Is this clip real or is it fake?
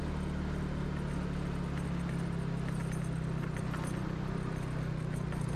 real